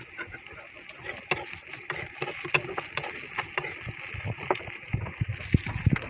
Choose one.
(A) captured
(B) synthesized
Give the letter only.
A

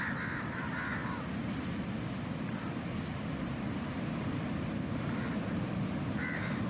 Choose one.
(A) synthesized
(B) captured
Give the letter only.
B